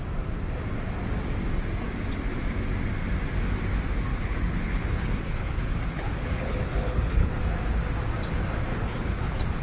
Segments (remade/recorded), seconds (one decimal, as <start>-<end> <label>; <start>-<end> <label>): 0.0-4.1 recorded; 4.1-7.4 remade; 7.4-8.7 recorded; 8.7-9.6 remade